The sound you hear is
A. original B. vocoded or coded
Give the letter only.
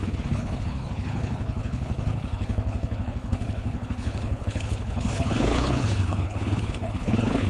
B